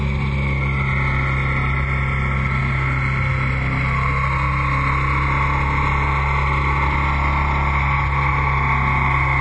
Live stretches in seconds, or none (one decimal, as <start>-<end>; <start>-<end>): 0.0-9.4